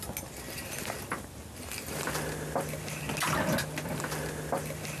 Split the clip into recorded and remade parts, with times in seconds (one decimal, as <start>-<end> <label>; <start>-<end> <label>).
0.0-5.0 recorded